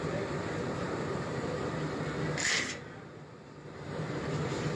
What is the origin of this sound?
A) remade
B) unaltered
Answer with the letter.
A